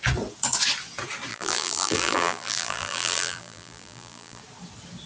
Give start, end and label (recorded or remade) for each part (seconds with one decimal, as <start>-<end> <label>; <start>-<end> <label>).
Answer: 0.0-1.3 recorded; 1.3-4.4 remade; 4.4-5.1 recorded

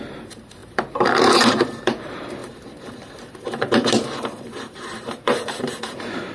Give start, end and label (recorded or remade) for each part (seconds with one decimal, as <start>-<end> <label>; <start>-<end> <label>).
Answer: 0.0-6.3 remade

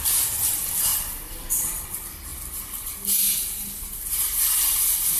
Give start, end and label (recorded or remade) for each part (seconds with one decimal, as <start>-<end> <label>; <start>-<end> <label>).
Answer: 0.0-5.2 recorded